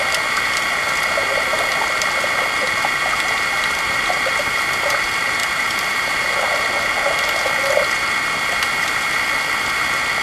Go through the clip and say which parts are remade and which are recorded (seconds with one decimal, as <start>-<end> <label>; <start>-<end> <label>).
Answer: 0.0-5.4 recorded; 5.4-6.0 remade; 6.0-10.2 recorded